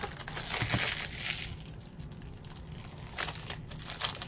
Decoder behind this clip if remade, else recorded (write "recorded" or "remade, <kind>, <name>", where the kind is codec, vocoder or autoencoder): recorded